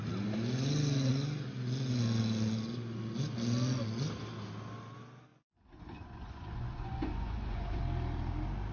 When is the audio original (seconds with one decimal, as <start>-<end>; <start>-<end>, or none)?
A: 0.0-5.3; 7.8-8.7